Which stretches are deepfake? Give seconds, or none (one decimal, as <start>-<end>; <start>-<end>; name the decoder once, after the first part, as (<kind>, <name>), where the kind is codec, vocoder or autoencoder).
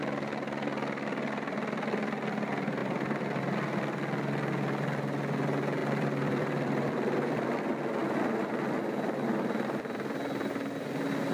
2.8-3.4 (vocoder, BigVGAN v2); 5.8-7.6